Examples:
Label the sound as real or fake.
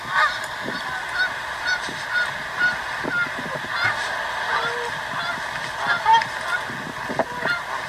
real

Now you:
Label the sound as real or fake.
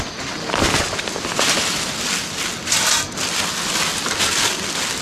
real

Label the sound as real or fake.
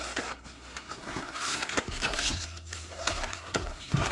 fake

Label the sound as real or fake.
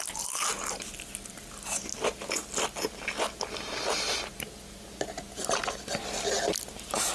real